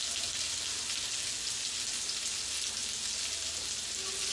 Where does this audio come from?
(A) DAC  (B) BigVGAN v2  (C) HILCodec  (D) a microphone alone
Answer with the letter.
D